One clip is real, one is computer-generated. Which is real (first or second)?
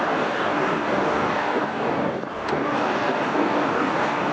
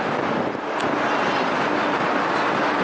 second